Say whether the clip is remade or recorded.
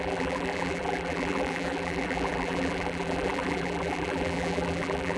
remade